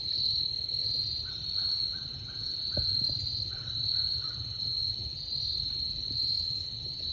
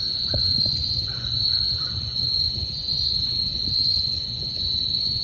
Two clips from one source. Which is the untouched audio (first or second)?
first